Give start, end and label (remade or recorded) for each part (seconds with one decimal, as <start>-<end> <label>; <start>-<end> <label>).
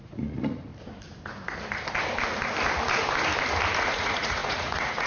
0.0-0.7 remade; 0.7-3.8 recorded; 3.8-5.1 remade